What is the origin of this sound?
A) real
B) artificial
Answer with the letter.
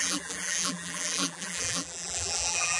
B